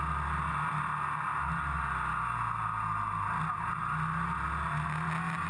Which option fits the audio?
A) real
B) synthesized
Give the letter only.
A